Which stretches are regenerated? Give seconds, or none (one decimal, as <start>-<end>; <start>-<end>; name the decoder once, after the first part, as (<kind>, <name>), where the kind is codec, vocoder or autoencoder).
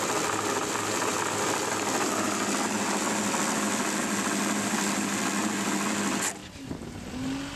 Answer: none